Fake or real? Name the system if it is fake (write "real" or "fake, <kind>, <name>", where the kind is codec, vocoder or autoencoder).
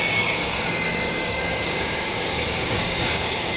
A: fake, codec, DAC